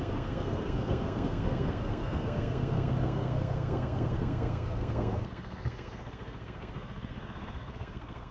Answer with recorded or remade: remade